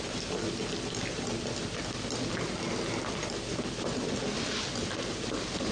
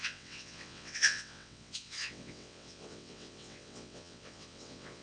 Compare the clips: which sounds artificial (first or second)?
second